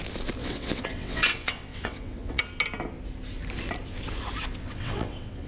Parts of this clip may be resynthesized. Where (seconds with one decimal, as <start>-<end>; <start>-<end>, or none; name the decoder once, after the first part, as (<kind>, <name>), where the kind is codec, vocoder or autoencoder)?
0.4-2.4 (vocoder, WaveNeXt); 4.5-5.5